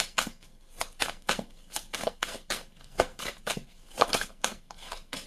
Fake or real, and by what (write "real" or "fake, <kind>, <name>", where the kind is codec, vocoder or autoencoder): fake, codec, SNAC